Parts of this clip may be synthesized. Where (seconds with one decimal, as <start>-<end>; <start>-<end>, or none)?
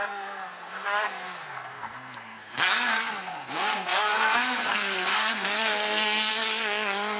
0.0-6.3